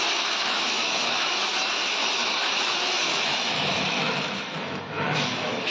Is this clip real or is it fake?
fake